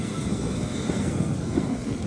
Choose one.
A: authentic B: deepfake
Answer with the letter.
B